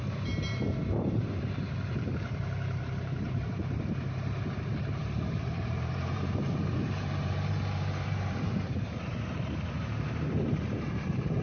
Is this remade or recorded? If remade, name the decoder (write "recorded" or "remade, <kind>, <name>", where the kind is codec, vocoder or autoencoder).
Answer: remade, vocoder, BigVGAN v2